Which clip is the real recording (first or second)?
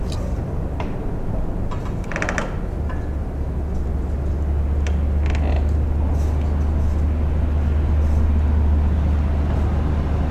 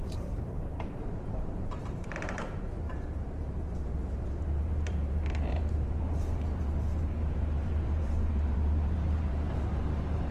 first